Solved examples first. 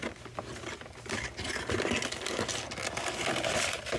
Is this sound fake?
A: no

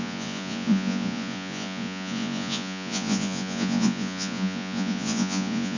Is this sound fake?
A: yes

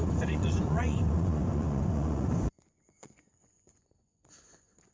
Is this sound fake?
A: yes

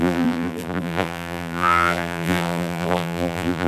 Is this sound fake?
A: yes